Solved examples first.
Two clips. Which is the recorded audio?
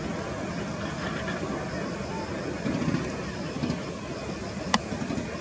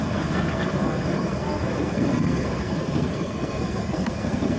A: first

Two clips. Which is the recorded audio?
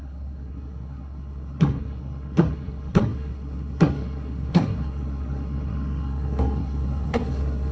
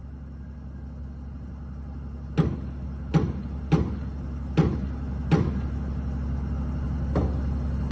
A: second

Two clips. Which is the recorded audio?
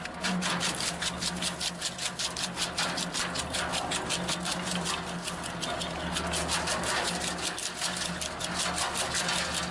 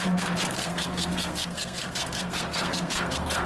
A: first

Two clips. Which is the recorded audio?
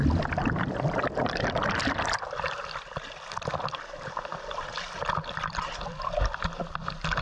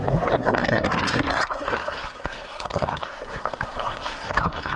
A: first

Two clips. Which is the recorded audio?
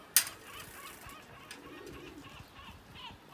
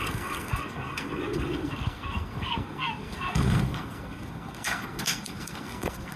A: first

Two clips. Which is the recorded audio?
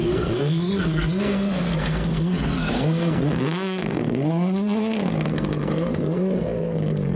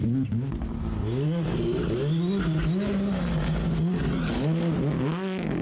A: second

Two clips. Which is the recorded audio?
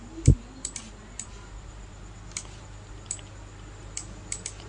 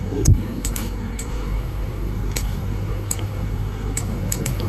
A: first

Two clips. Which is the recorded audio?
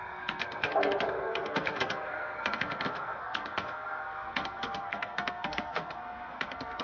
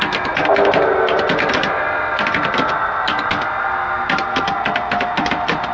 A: second